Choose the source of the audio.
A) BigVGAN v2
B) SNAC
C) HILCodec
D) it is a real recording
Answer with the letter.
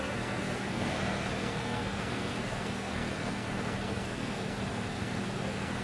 B